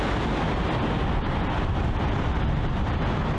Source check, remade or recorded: recorded